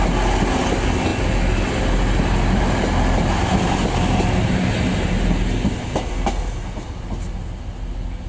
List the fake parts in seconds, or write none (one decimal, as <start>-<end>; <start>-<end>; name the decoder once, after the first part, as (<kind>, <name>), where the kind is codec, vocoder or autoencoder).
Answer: none